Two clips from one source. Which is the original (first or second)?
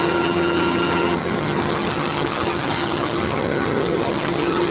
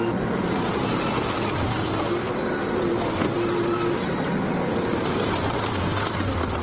second